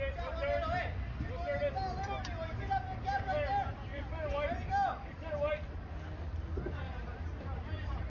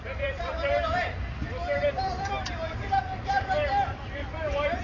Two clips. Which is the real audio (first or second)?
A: first